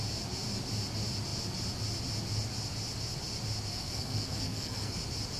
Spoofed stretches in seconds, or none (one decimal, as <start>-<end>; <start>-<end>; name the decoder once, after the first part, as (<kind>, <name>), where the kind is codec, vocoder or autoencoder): 3.7-5.0 (codec, SNAC)